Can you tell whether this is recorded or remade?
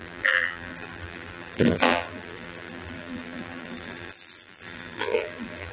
remade